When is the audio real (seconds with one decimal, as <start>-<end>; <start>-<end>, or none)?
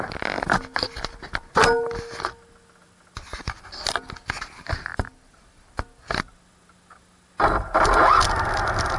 0.0-4.9; 5.7-9.0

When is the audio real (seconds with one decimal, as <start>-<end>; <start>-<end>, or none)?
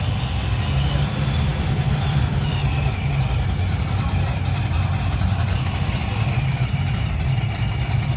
0.0-1.5; 3.4-8.2